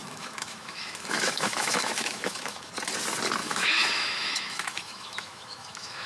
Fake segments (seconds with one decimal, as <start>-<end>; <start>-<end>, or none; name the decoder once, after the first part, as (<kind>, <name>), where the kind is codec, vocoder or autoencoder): 0.0-2.7 (autoencoder, DAC-VAE); 3.4-6.1